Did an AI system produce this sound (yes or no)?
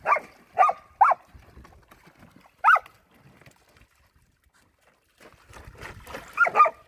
no